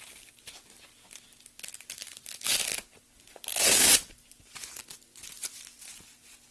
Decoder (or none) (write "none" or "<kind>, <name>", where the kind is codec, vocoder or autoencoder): none